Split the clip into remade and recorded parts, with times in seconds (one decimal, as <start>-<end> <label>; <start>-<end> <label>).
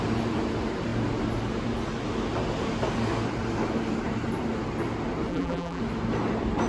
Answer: 0.0-5.3 recorded; 5.3-5.8 remade; 5.8-6.7 recorded